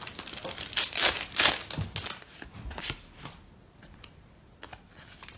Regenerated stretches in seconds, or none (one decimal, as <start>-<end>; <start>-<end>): 2.3-4.4